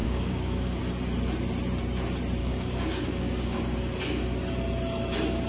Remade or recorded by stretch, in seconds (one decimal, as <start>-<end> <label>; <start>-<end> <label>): 0.0-0.8 remade; 0.8-2.4 recorded; 2.4-3.6 remade; 3.6-5.5 recorded